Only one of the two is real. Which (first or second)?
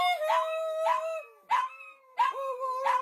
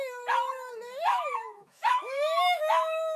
first